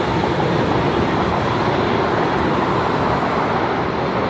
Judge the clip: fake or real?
real